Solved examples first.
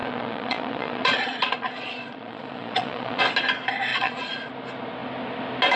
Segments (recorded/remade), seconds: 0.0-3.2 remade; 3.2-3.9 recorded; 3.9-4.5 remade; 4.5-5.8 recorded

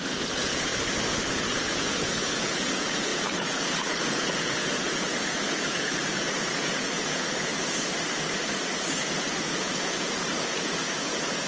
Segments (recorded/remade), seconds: 0.0-0.7 remade; 0.7-1.3 recorded; 1.3-7.5 remade; 7.5-9.0 recorded; 9.0-11.5 remade

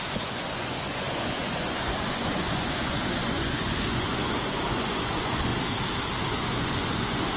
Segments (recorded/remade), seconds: 0.0-5.5 remade; 5.5-6.3 recorded; 6.3-7.4 remade

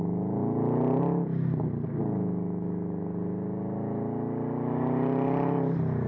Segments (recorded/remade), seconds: 0.0-6.1 recorded

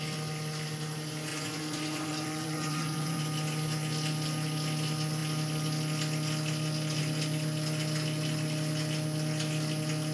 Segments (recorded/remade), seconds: 0.0-1.3 recorded; 1.3-3.2 remade; 3.2-10.1 recorded

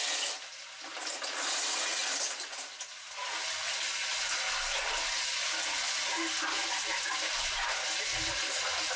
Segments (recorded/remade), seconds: 0.0-9.0 recorded